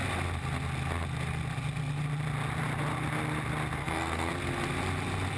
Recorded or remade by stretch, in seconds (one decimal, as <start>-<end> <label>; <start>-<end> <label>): 0.0-3.8 recorded; 3.8-4.3 remade; 4.3-5.4 recorded